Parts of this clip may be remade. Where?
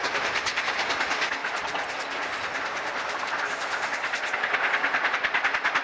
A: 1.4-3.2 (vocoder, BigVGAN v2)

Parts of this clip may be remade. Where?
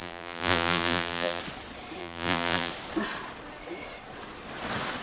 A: 0.0-1.4 (vocoder, BigVGAN v2); 2.0-2.7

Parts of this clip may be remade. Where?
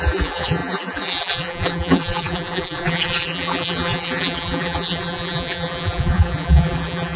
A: 0.0-7.2 (vocoder, BigVGAN v2)